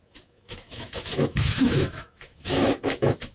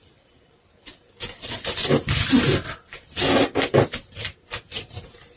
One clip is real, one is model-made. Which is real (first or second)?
second